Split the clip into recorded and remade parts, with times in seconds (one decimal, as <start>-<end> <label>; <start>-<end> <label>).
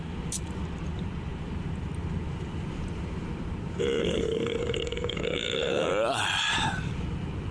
0.0-4.0 recorded; 4.0-5.9 remade; 5.9-7.5 recorded